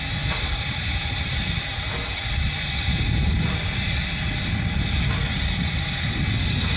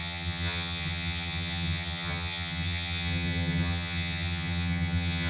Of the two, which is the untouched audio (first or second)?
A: first